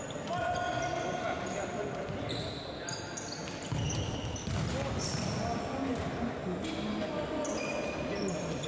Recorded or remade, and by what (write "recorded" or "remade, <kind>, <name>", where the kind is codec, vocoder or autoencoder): recorded